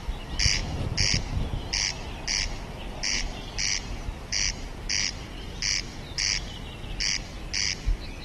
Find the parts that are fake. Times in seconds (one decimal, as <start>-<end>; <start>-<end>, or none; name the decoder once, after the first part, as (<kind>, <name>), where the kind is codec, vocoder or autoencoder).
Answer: none